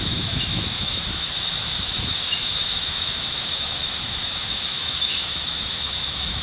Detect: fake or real fake